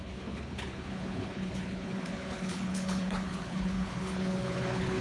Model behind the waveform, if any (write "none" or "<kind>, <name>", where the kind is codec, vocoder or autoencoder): codec, HILCodec